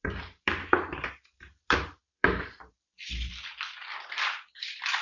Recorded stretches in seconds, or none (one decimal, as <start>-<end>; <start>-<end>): none